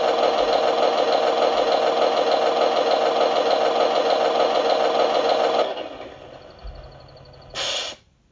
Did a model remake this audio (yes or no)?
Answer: no